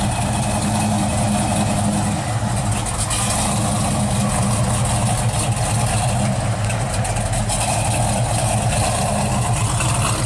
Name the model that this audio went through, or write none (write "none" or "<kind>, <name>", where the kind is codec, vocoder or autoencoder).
none